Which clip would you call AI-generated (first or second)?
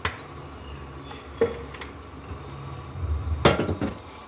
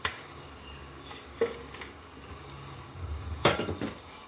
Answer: second